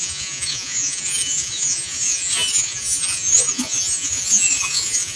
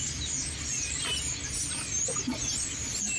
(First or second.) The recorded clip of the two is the second